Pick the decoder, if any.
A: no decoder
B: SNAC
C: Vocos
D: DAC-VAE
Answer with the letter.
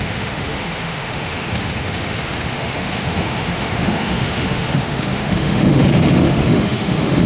D